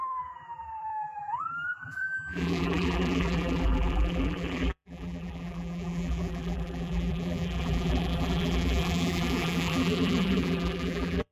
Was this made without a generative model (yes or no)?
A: no